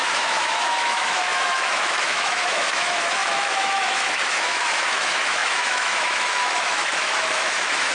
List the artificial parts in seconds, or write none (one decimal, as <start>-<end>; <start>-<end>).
0.0-7.9